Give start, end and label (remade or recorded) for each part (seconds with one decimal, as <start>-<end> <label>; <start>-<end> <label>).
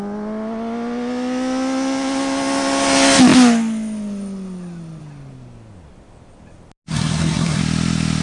0.0-6.9 recorded; 6.9-7.6 remade; 7.6-8.2 recorded